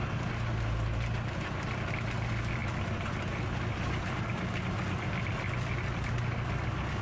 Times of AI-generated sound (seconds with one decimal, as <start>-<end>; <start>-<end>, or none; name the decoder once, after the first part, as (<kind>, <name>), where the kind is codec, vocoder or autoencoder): none